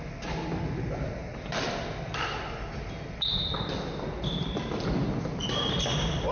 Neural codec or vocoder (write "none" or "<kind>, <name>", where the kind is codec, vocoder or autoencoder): none